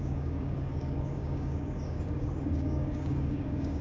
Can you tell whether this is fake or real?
fake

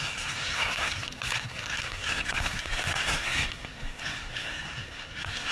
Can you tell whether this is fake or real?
fake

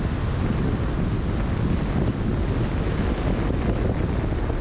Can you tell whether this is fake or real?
real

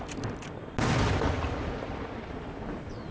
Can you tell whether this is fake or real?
real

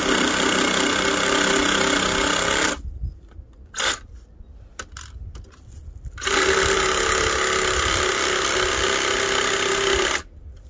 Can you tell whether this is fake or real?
real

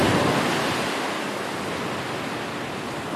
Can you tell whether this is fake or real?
real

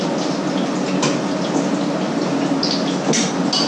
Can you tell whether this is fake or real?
real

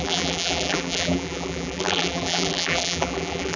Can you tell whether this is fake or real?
fake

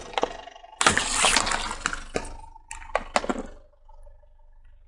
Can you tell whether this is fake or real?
real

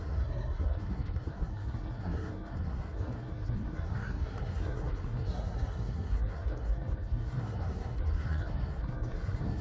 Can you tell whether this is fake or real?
fake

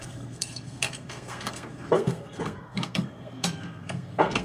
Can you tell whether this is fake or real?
fake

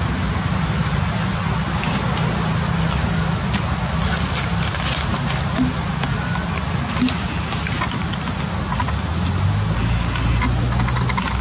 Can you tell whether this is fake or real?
real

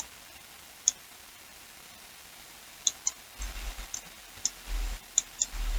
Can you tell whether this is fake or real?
real